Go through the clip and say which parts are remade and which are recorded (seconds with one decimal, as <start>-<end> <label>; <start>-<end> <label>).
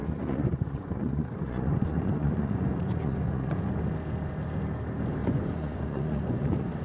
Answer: 0.0-3.7 remade; 3.7-5.2 recorded; 5.2-6.8 remade